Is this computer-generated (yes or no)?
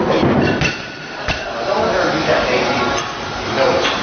no